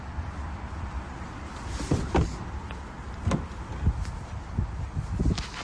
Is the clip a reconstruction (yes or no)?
no